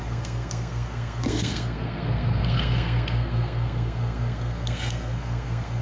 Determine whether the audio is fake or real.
fake